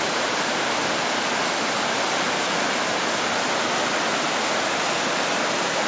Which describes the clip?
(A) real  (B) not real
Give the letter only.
A